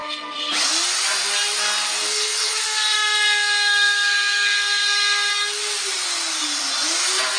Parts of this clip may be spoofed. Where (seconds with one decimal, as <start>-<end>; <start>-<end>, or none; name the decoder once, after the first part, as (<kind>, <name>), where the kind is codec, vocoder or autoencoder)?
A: 0.0-0.5 (codec, SNAC); 2.0-5.3